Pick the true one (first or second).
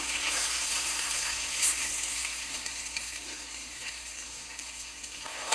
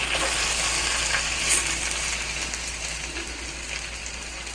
second